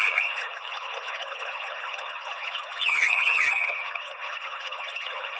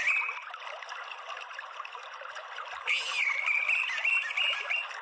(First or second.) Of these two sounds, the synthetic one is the first